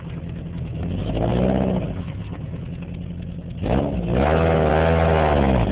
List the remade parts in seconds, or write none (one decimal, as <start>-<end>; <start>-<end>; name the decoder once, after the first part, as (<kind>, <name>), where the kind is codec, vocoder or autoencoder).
none